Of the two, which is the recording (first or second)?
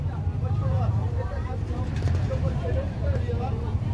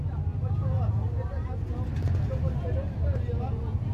second